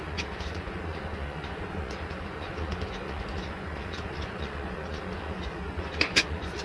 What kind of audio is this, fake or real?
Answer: fake